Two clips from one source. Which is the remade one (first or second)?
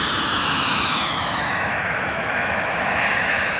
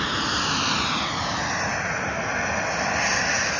first